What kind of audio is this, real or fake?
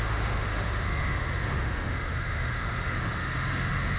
fake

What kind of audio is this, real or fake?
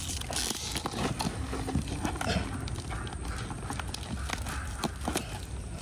real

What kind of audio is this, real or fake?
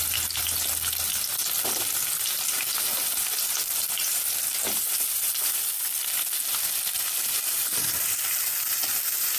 real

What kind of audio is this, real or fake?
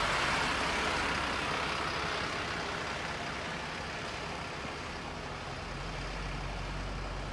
real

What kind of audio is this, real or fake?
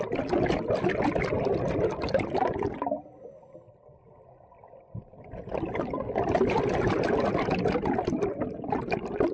real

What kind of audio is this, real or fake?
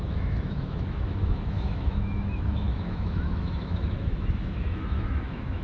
fake